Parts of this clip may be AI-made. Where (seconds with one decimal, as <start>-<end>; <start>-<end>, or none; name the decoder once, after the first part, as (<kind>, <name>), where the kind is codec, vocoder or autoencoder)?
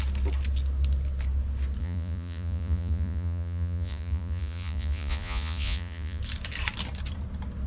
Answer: 1.8-6.2 (vocoder, Vocos)